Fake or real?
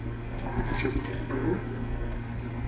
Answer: fake